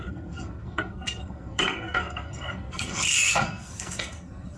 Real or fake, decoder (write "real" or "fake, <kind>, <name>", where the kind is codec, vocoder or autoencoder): fake, codec, SNAC